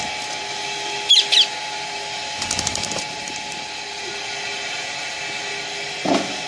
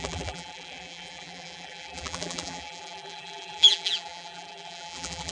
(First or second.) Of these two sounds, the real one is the first